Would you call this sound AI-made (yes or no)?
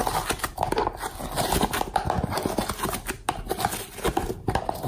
no